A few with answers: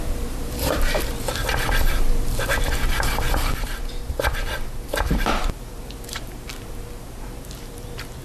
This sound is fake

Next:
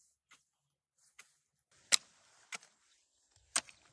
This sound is real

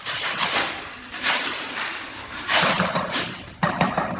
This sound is fake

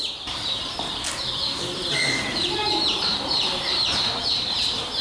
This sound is fake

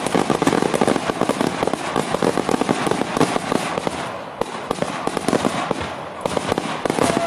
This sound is real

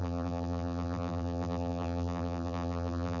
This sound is fake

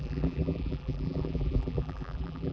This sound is fake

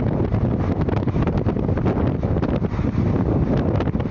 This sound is real